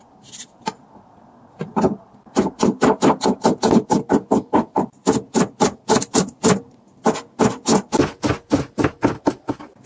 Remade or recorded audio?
recorded